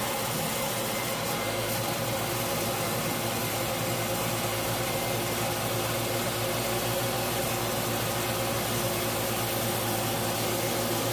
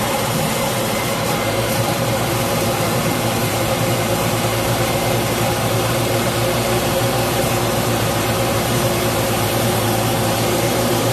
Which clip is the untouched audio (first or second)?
first